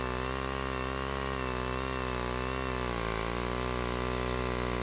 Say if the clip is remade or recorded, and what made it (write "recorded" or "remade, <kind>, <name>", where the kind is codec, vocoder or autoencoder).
recorded